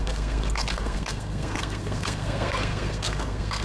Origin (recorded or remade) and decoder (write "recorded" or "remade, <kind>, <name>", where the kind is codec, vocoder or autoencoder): remade, codec, SNAC